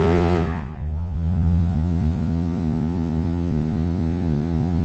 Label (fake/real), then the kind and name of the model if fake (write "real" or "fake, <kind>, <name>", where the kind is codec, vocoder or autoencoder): fake, vocoder, Vocos